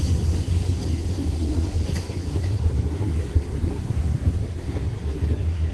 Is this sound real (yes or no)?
no